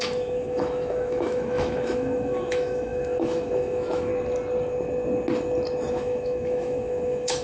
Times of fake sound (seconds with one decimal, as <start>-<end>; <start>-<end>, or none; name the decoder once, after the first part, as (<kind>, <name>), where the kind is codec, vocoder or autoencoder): 0.0-4.1 (autoencoder, DAC-VAE); 5.9-7.4